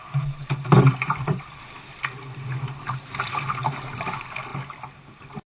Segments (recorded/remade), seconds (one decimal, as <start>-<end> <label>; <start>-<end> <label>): 0.0-5.5 recorded